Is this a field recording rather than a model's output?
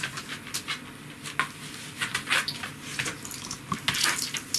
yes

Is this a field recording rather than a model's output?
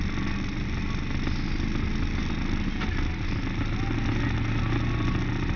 yes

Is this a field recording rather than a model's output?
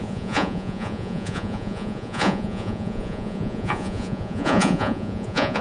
no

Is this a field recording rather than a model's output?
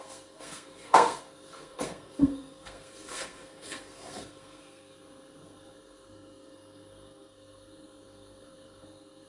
no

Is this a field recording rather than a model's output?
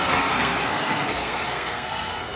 no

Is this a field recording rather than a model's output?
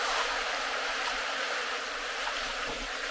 no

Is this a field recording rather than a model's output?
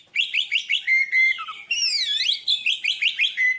yes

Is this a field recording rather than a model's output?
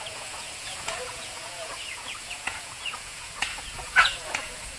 no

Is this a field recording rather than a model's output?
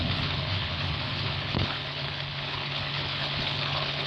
no